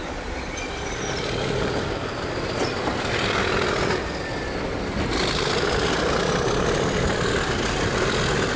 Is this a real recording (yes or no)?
yes